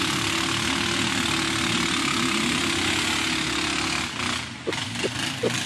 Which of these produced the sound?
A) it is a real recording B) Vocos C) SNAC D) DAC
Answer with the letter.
A